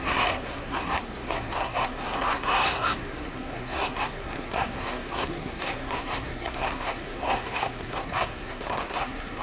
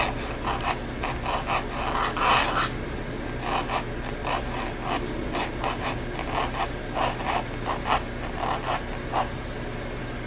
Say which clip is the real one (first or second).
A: second